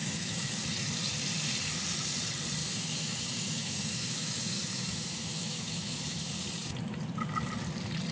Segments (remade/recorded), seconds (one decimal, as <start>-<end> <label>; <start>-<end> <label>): 0.0-0.6 remade; 0.6-2.6 recorded; 2.6-6.3 remade; 6.3-8.1 recorded